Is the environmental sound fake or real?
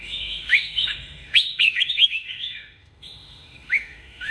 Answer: fake